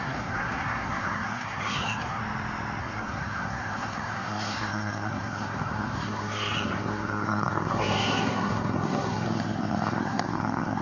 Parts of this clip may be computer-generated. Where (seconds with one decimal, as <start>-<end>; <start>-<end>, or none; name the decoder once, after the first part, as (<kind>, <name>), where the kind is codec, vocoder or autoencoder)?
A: 0.0-2.2 (codec, SNAC); 2.8-10.8

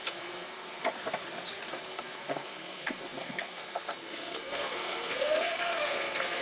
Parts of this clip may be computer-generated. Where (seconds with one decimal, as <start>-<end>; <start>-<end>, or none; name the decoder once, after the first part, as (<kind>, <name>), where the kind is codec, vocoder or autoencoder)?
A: 0.0-0.8 (codec, SNAC); 1.8-6.4

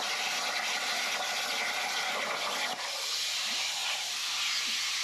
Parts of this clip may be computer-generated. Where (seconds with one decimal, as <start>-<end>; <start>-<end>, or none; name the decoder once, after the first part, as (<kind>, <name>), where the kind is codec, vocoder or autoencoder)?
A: none

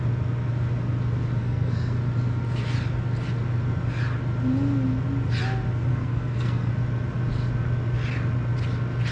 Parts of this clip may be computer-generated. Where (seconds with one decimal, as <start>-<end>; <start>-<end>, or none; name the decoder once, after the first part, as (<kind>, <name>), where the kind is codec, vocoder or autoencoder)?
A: 1.4-2.0 (codec, SNAC); 5.9-6.7

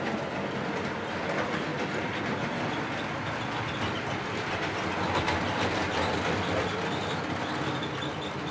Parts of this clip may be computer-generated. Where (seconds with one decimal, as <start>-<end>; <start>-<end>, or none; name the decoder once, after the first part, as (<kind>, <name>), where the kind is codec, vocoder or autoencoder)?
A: none

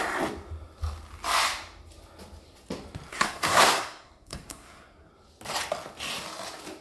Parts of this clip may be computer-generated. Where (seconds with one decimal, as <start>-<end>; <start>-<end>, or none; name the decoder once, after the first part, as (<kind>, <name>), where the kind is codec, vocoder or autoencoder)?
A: 3.1-5.1 (codec, SNAC)

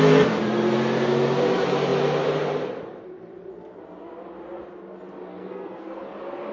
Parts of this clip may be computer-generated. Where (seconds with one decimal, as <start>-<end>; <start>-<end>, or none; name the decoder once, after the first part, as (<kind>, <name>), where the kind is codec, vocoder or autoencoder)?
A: 5.3-6.0 (codec, SNAC)